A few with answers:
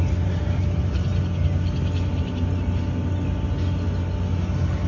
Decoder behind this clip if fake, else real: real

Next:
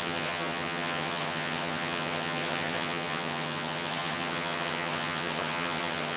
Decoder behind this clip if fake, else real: fake, vocoder, HiFi-GAN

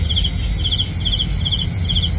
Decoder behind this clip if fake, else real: real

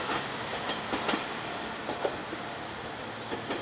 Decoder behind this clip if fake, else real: real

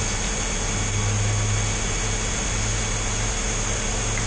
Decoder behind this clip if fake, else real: real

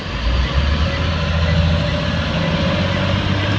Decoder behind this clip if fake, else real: real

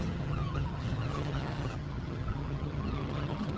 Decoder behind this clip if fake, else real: fake, vocoder, HiFi-GAN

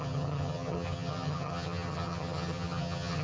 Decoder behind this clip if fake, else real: fake, vocoder, HiFi-GAN